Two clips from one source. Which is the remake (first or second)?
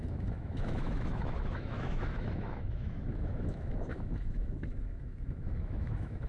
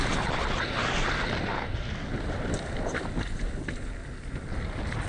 first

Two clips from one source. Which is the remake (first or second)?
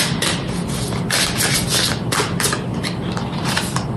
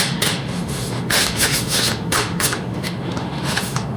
second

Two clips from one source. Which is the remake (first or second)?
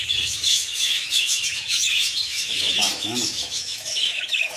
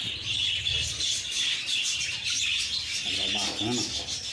first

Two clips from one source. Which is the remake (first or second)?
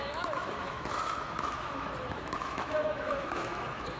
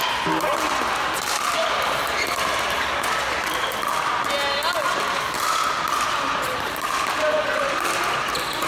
first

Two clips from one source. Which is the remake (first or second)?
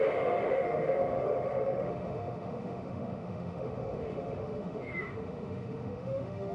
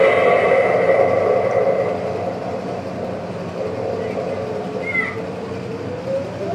first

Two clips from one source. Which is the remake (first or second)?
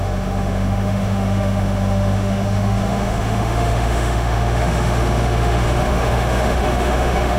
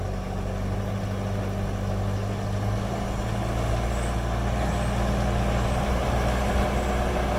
first